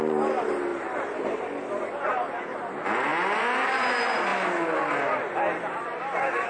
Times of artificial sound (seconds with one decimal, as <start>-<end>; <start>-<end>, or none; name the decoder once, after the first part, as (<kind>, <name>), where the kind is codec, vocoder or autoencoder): none